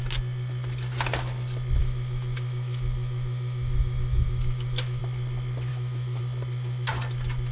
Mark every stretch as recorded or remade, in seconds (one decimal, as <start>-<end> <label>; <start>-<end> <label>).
0.0-1.8 recorded; 1.8-5.0 remade; 5.0-5.7 recorded; 5.7-6.2 remade; 6.2-7.5 recorded